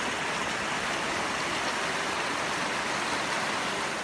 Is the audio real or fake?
real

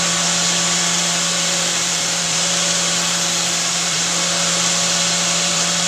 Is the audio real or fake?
fake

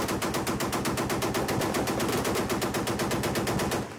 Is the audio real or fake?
real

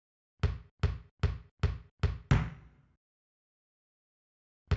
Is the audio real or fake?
real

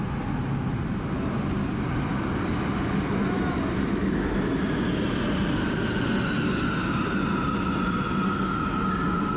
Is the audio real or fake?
real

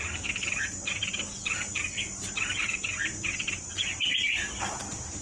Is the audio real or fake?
fake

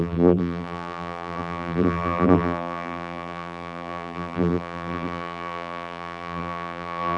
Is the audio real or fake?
fake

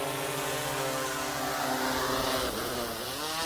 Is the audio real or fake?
real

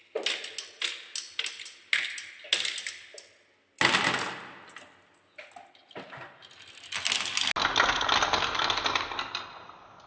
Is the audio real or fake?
real